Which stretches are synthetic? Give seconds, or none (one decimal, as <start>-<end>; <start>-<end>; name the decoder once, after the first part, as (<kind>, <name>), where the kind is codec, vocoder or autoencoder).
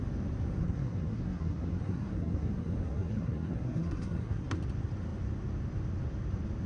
0.6-4.6 (codec, SNAC)